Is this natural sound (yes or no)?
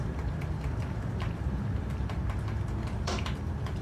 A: no